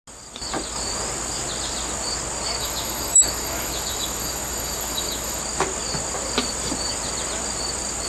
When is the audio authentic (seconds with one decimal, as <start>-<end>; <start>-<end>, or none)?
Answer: 0.0-2.6; 5.4-8.1

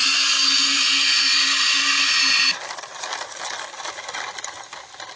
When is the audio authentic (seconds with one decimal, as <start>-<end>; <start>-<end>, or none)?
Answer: 0.0-5.2

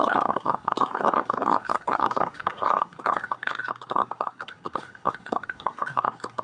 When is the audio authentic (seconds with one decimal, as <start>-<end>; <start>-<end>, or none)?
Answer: none

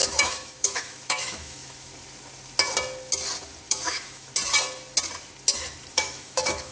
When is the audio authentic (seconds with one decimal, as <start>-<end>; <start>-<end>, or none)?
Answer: 1.9-3.7; 4.3-5.9

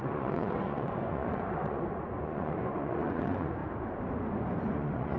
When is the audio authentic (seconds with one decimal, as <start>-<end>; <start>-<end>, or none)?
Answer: 3.6-4.6

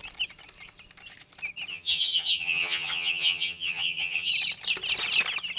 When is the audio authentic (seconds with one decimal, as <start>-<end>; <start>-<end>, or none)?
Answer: 0.0-1.7; 4.3-5.6